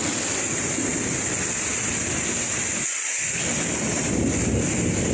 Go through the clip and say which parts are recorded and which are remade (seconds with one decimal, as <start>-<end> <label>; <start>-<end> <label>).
0.0-5.1 recorded